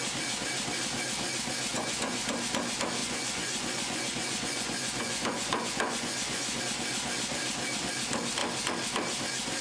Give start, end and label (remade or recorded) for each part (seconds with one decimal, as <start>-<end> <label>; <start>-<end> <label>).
0.0-1.7 recorded; 1.7-2.3 remade; 2.3-3.0 recorded; 3.0-6.6 remade; 6.6-9.6 recorded